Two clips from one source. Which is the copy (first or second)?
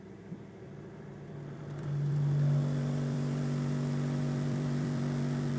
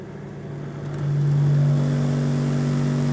first